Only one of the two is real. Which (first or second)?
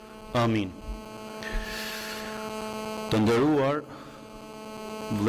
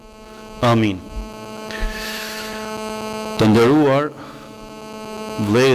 first